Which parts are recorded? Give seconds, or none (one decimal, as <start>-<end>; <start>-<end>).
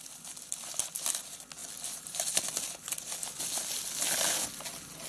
0.0-1.6; 2.4-5.1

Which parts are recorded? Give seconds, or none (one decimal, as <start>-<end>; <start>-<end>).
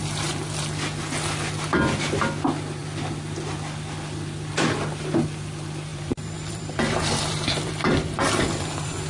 0.0-5.9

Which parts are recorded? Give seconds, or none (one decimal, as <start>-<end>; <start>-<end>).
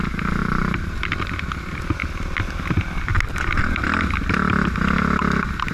0.0-0.4; 1.5-5.7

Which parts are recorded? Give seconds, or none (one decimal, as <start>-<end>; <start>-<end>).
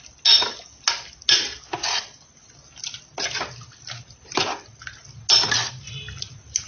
0.0-6.7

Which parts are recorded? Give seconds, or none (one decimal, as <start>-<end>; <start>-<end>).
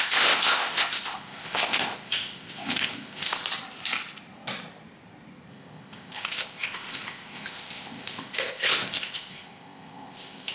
3.4-5.5